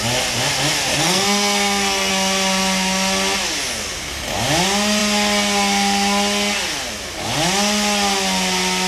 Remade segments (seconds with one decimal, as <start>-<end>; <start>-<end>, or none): 0.9-2.1